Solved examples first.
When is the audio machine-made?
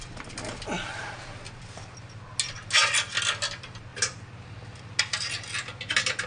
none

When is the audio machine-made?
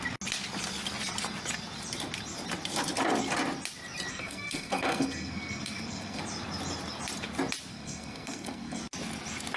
4.1-6.2 (codec, SNAC); 7.7-8.8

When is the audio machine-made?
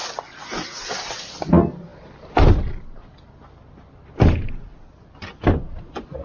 none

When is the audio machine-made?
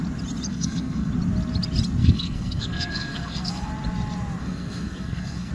0.5-1.1 (codec, SNAC); 2.0-3.7; 4.4-5.5